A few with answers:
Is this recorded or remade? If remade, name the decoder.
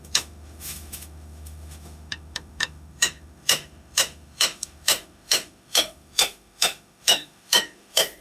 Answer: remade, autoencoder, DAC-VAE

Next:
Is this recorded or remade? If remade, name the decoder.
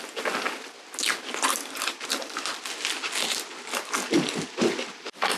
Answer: recorded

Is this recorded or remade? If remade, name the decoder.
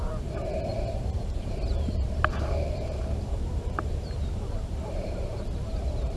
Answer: remade, vocoder, BigVGAN v2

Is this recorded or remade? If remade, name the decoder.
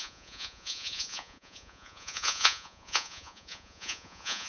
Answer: remade, vocoder, Vocos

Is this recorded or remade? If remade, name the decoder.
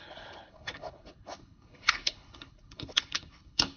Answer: remade, codec, HILCodec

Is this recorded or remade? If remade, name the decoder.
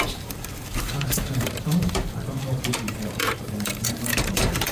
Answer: remade, vocoder, BigVGAN v2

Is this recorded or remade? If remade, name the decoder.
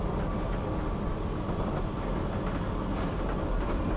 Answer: recorded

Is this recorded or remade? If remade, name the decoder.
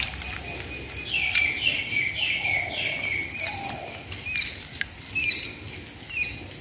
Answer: recorded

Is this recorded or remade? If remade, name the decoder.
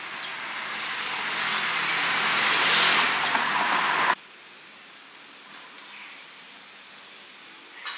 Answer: recorded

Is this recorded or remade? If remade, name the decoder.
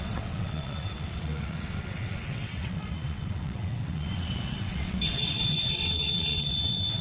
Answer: remade, vocoder, WaveNeXt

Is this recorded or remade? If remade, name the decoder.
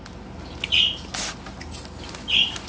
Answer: recorded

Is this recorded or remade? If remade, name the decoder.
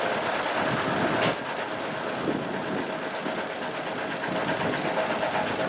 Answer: recorded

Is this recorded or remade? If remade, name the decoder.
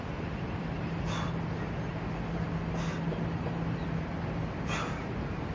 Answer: recorded